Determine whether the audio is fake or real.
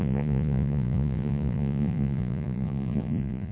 fake